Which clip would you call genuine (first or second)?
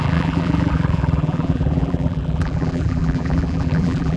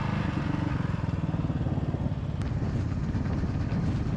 second